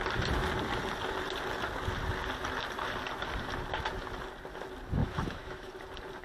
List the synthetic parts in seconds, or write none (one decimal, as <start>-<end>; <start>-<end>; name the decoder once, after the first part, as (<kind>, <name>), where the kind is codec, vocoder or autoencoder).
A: 5.0-5.7 (autoencoder, DAC-VAE)